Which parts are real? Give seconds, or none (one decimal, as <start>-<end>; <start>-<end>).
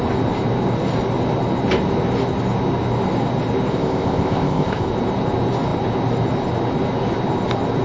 0.0-3.7; 4.9-7.8